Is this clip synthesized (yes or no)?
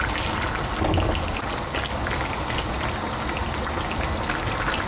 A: no